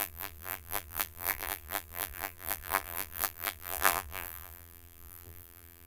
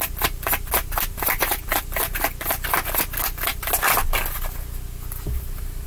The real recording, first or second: second